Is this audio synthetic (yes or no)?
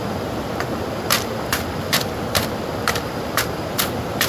no